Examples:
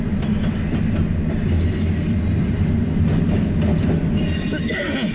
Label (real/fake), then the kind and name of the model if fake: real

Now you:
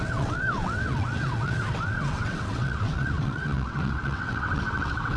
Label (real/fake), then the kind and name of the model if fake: fake, vocoder, WaveNeXt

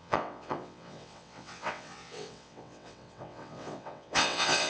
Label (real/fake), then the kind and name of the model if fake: fake, vocoder, WaveNeXt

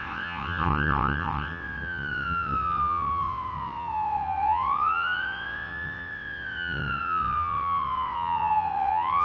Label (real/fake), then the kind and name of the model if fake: fake, vocoder, WaveNeXt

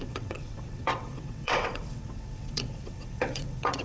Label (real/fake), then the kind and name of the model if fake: fake, vocoder, WaveNeXt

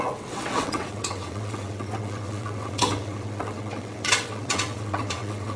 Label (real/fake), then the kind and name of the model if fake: fake, vocoder, WaveNeXt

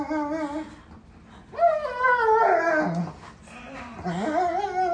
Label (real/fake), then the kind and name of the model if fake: real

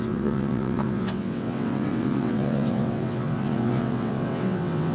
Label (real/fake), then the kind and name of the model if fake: fake, vocoder, WaveNeXt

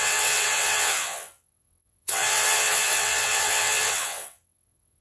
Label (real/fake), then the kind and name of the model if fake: fake, vocoder, WaveNeXt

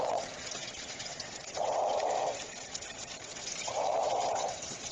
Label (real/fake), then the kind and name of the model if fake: fake, vocoder, WaveNeXt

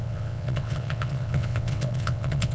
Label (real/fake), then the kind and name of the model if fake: fake, vocoder, WaveNeXt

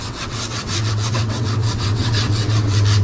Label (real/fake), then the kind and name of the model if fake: fake, vocoder, WaveNeXt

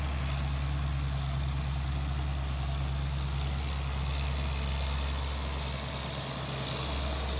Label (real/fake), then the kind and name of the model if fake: real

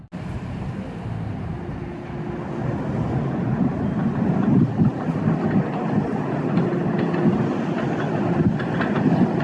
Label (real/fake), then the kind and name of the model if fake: real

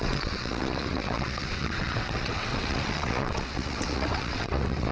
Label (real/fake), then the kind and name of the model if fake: fake, vocoder, WaveNeXt